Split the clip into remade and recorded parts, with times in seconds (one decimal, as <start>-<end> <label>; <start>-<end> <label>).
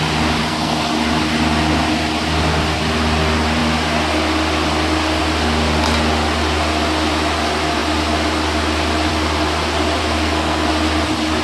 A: 0.0-0.4 recorded; 0.4-0.9 remade; 0.9-10.0 recorded; 10.0-10.7 remade; 10.7-11.4 recorded